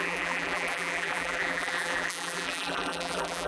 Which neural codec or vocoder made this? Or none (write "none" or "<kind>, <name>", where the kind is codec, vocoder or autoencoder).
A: vocoder, BigVGAN v2